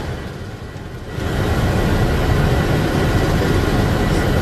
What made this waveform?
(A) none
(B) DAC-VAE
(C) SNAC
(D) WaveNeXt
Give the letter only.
A